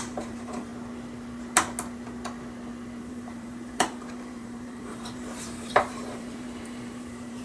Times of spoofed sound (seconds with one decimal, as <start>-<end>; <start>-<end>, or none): 0.0-0.7; 3.0-7.4